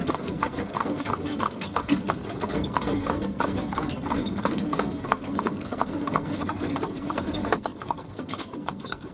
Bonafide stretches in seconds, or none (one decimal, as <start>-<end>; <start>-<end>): none